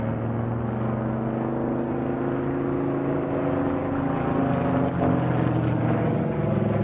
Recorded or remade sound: recorded